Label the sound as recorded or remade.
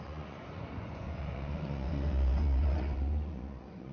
remade